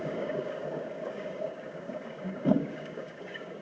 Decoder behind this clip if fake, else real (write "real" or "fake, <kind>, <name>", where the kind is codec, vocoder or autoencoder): fake, codec, DAC